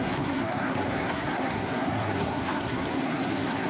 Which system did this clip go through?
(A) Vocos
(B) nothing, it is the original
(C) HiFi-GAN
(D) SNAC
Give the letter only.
D